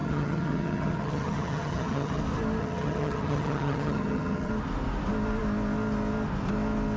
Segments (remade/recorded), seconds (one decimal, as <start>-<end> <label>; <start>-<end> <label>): 0.0-2.2 remade; 2.2-2.6 recorded; 2.6-4.5 remade; 4.5-7.0 recorded

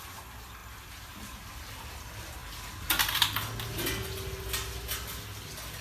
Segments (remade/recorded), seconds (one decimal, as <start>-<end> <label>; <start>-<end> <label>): 0.0-5.8 recorded

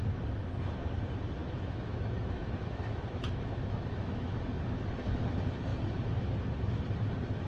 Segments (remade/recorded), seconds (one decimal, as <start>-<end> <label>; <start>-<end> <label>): 0.0-1.4 recorded; 1.4-4.3 remade; 4.3-7.5 recorded

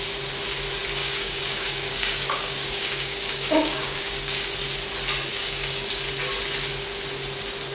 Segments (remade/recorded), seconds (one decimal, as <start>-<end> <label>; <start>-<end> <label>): 0.0-1.0 recorded; 1.0-4.5 remade; 4.5-5.3 recorded; 5.3-5.9 remade; 5.9-7.7 recorded

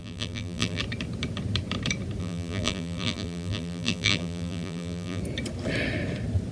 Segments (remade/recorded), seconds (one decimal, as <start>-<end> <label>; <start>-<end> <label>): 0.0-0.8 remade; 0.8-2.2 recorded; 2.2-5.2 remade; 5.2-6.5 recorded

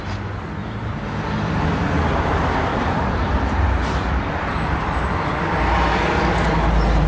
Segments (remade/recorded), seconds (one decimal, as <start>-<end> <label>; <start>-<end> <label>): 0.0-0.6 recorded; 0.6-2.3 remade; 2.3-2.7 recorded; 2.7-5.4 remade; 5.4-7.1 recorded

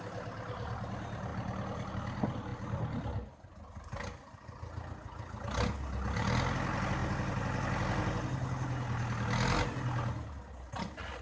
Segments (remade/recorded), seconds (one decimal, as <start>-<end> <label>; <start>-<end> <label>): 0.0-11.2 recorded